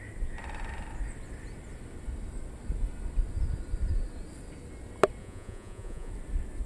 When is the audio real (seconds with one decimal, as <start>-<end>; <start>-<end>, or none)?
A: 0.0-5.2; 6.1-6.7